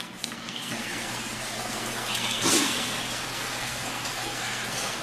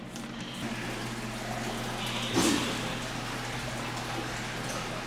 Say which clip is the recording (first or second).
second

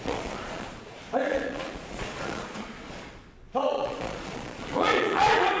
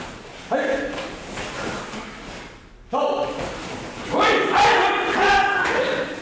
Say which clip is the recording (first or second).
second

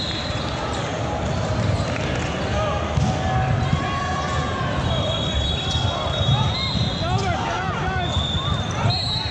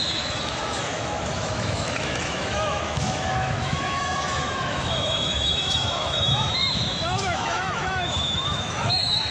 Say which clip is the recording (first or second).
first